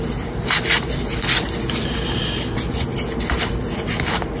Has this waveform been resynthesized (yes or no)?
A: no